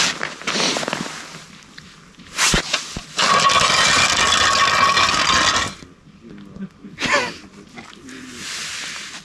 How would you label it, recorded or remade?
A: recorded